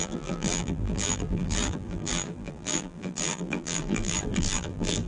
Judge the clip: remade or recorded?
remade